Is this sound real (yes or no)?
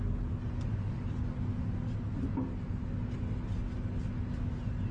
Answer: yes